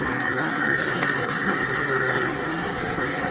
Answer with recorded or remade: remade